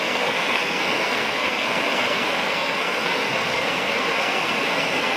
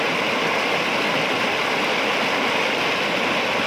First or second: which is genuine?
second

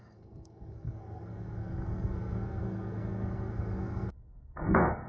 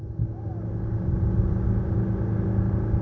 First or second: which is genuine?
second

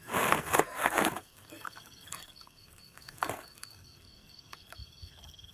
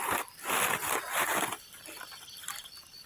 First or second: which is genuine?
second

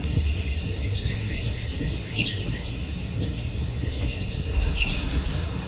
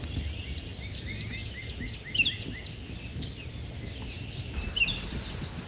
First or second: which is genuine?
second